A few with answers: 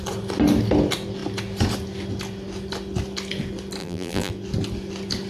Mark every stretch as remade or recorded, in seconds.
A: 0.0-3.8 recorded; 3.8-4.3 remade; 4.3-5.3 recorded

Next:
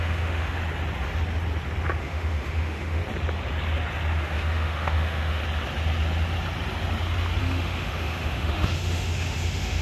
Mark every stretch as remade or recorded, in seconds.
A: 0.0-0.6 remade; 0.6-2.0 recorded; 2.0-3.0 remade; 3.0-4.2 recorded; 4.2-5.4 remade; 5.4-7.4 recorded; 7.4-9.8 remade